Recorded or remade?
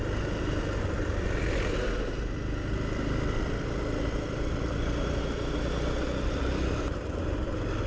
recorded